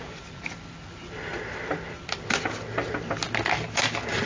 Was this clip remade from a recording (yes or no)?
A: no